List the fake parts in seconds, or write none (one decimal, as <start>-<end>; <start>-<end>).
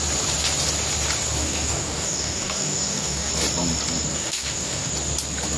1.4-3.3; 4.1-4.9